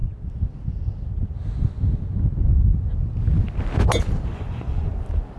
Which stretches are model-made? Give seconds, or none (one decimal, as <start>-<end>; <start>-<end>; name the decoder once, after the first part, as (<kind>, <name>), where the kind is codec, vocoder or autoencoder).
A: 4.3-4.9 (vocoder, Vocos)